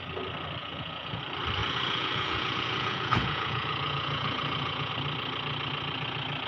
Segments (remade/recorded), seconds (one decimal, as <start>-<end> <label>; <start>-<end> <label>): 0.0-0.6 recorded; 0.6-1.2 remade; 1.2-1.6 recorded; 1.6-4.9 remade; 4.9-6.5 recorded